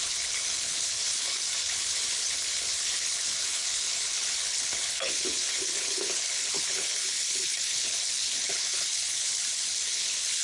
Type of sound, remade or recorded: remade